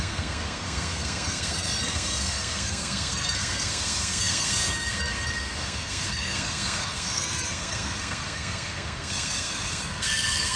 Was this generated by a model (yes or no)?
yes